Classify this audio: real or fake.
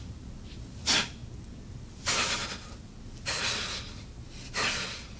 real